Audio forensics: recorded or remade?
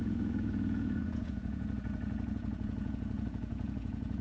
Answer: remade